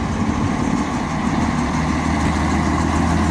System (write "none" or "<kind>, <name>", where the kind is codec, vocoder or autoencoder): none